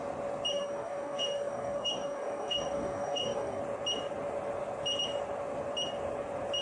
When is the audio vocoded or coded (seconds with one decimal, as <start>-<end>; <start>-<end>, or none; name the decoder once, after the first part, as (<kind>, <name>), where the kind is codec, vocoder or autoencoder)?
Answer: 0.5-3.6 (codec, DAC)